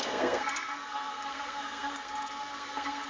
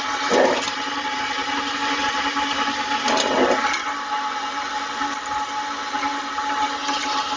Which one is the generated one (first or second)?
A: first